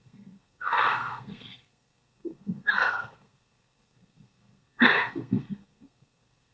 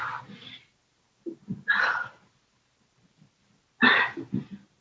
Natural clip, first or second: second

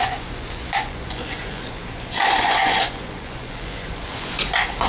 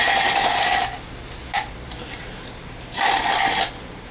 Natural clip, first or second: second